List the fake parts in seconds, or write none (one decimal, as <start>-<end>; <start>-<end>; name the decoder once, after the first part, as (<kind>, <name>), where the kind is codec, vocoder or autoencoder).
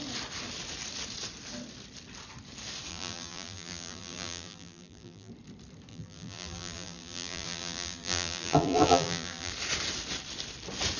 2.9-5.3 (vocoder, BigVGAN v2); 5.9-9.5